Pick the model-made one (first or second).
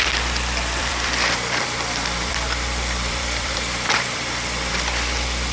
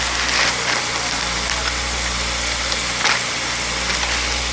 first